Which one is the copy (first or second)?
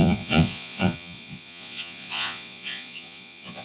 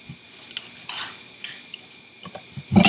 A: first